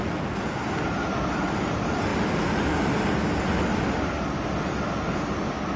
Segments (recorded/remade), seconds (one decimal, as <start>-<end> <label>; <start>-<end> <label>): 0.0-5.8 recorded

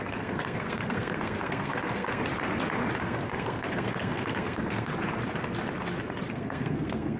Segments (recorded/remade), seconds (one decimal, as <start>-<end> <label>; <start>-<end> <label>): 0.0-2.2 remade; 2.2-3.0 recorded; 3.0-4.9 remade; 4.9-6.3 recorded; 6.3-7.2 remade